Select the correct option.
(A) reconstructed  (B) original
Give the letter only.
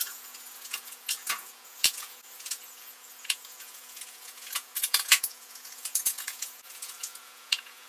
A